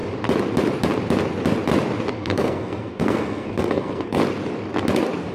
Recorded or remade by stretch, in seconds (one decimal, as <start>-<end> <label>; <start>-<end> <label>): 0.0-2.1 recorded; 2.1-4.2 remade; 4.2-5.3 recorded